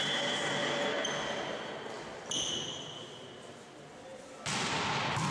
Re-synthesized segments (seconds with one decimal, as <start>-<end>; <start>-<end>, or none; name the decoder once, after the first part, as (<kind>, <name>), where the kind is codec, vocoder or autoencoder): none